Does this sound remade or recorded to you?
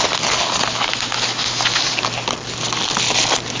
recorded